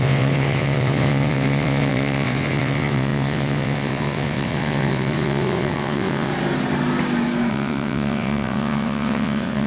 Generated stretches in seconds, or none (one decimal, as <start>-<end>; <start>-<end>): 0.0-6.3; 7.5-9.7

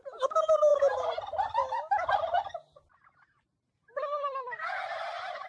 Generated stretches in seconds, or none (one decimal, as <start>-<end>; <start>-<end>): none

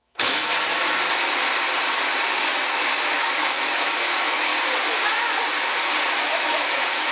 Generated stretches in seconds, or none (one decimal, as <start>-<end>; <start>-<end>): 0.0-0.4; 2.8-4.5; 6.2-7.1

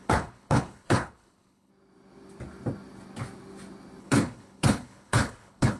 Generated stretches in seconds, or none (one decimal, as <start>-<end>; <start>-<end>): 0.0-1.7; 4.0-5.8